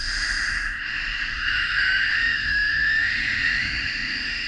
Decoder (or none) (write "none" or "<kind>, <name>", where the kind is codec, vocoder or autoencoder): autoencoder, DAC-VAE